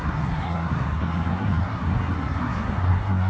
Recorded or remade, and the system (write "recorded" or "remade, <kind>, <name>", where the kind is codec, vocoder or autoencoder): remade, codec, SNAC